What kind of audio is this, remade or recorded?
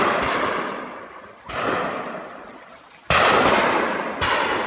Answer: recorded